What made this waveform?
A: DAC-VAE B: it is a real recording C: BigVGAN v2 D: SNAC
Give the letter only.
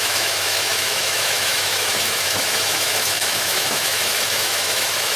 A